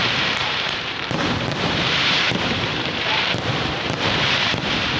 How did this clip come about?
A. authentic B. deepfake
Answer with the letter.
B